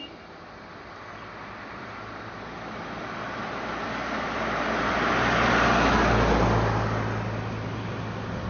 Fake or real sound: real